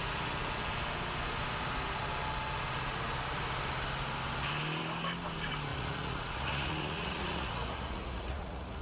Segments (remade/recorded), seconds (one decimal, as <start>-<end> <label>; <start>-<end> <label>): 0.0-5.7 recorded; 5.7-8.8 remade